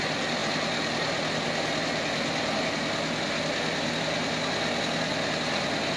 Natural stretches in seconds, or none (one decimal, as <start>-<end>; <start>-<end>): 0.0-6.0